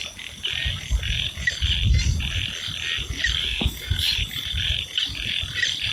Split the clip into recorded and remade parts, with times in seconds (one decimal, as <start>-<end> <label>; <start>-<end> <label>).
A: 0.0-3.4 recorded; 3.4-4.2 remade; 4.2-5.9 recorded